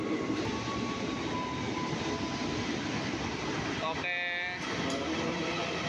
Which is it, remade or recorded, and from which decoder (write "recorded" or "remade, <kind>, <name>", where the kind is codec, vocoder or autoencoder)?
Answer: recorded